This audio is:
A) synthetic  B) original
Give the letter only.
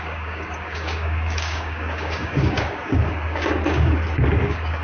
A